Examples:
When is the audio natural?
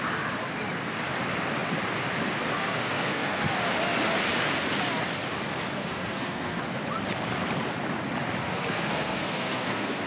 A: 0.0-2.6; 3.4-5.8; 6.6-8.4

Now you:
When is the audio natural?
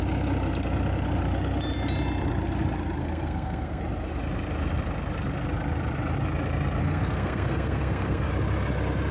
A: 0.0-3.0; 3.8-6.8; 8.3-9.1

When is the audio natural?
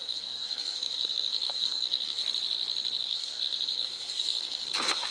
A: 2.2-3.0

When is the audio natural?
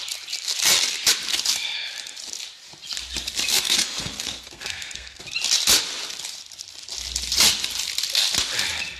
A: 0.0-3.5; 5.2-9.0